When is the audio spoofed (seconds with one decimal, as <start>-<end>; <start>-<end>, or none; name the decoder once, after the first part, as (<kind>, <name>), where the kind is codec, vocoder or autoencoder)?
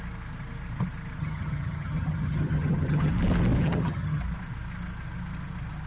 1.2-3.1 (vocoder, HiFi-GAN); 3.6-4.2